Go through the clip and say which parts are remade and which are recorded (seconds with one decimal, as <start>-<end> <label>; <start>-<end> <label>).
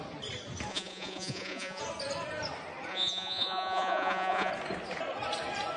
0.0-0.7 recorded; 0.7-1.8 remade; 1.8-2.9 recorded; 2.9-4.5 remade; 4.5-5.8 recorded